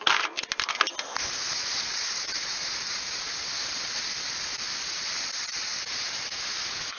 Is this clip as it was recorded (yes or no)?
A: yes